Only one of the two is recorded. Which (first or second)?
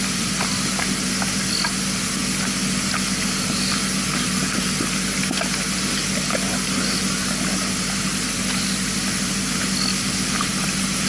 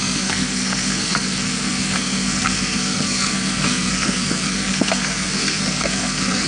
first